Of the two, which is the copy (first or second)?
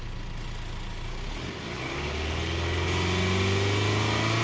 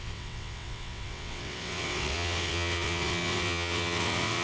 second